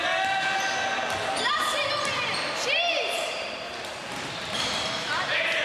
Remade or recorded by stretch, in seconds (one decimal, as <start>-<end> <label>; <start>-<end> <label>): 0.0-1.5 recorded; 1.5-4.0 remade; 4.0-5.6 recorded